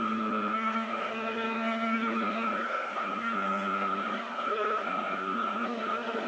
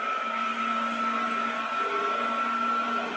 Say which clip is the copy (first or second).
first